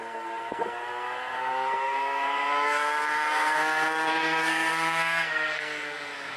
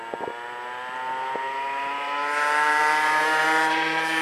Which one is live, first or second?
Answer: second